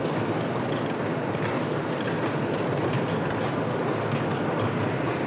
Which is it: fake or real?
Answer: real